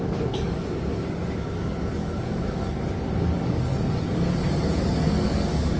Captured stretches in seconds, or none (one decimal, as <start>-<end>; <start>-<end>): 3.7-5.3